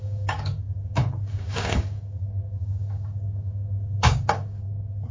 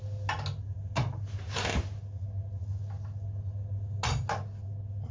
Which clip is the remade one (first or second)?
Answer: first